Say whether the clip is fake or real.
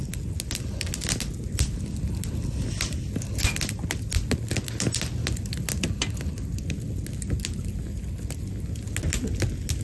real